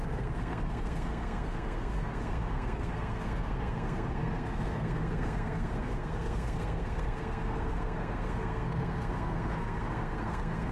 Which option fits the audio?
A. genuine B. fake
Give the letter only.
B